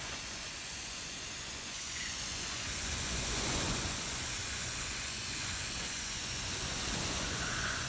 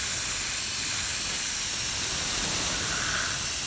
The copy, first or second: first